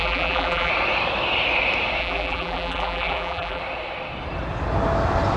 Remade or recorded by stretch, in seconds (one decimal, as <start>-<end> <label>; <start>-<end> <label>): 0.0-0.7 remade; 0.7-2.0 recorded; 2.0-3.6 remade; 3.6-5.4 recorded